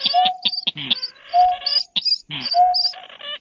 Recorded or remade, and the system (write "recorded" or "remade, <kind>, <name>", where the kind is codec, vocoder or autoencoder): recorded